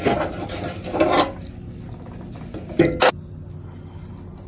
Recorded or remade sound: recorded